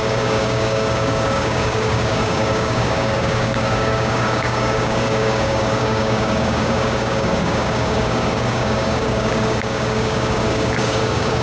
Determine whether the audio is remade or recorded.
remade